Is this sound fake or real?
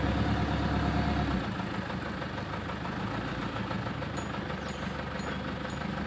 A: real